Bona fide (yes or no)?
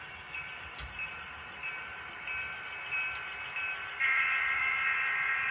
no